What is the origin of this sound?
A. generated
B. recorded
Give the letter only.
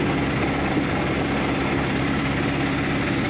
B